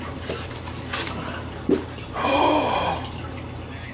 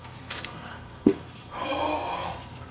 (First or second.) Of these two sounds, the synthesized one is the second